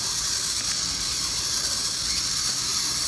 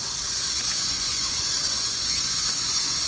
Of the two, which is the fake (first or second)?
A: second